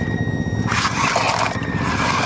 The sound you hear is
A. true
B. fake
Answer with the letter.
A